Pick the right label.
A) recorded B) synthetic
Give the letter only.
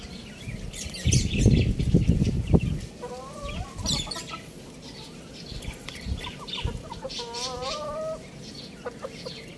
A